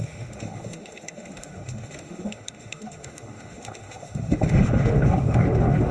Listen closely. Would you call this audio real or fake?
fake